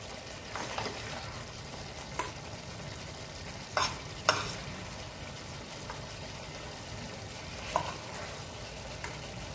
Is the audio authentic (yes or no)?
yes